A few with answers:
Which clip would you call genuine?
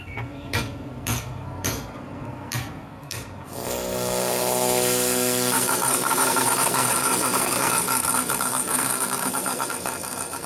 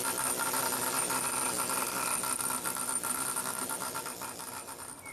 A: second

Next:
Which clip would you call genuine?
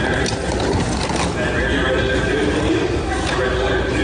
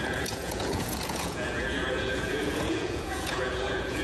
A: first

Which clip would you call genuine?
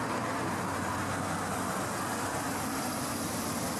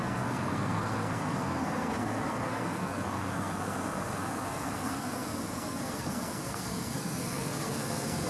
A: first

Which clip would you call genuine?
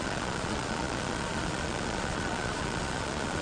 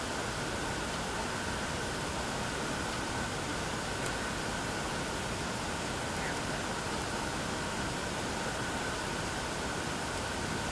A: second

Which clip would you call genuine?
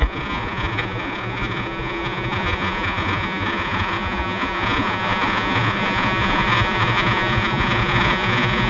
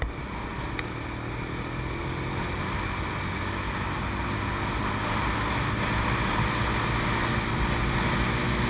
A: second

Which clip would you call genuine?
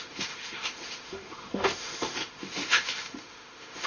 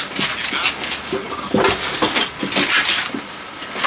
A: second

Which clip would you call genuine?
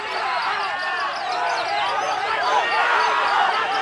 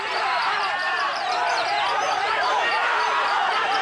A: first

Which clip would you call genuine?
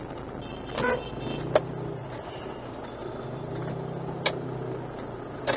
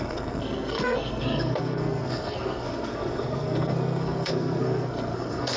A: first